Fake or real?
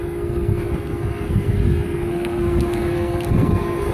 fake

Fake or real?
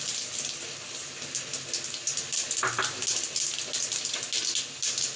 real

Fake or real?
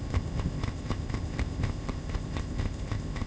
fake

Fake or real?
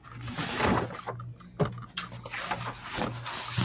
real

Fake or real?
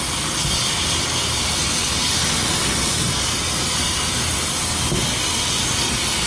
real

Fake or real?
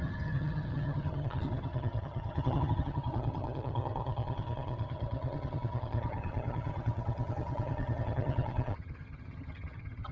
fake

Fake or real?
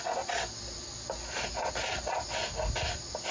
real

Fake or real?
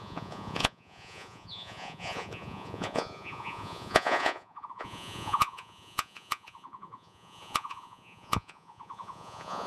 fake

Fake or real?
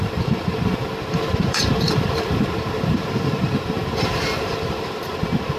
fake